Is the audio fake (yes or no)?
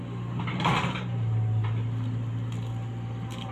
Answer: no